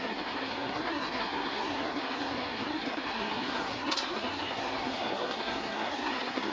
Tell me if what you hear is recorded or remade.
remade